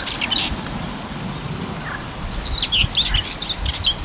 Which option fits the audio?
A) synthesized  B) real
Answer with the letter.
B